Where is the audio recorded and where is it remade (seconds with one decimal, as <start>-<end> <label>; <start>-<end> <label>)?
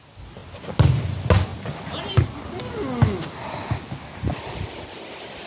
0.0-5.5 recorded